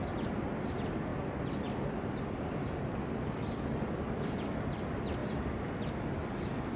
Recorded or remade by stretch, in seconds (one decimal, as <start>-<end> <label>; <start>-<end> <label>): 0.0-6.8 recorded